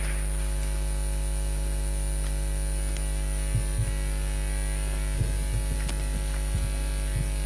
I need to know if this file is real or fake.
real